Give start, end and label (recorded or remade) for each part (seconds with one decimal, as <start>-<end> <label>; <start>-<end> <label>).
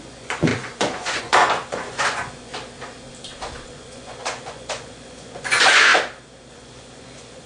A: 0.0-2.5 remade; 2.5-3.7 recorded; 3.7-5.9 remade; 5.9-6.5 recorded; 6.5-7.5 remade